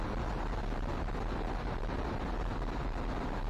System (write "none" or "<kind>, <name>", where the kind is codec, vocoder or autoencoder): none